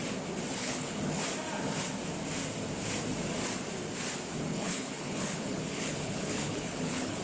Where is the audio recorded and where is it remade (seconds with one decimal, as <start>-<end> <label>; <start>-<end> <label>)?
0.0-0.5 recorded; 0.5-1.2 remade; 1.2-4.5 recorded; 4.5-7.2 remade